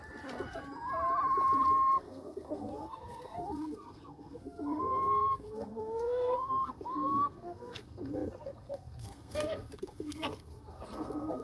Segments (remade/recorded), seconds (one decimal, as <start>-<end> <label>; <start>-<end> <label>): 0.0-2.0 recorded; 2.0-11.4 remade